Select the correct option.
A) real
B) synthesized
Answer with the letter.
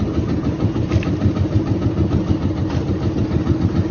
A